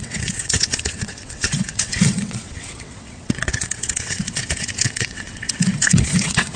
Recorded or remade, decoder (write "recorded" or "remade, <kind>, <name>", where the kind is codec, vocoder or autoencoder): remade, vocoder, WaveNeXt